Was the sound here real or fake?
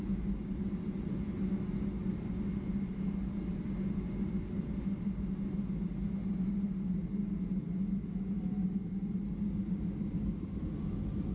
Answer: real